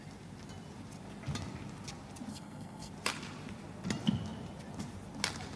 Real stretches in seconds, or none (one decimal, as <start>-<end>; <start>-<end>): 0.0-2.3; 2.9-5.6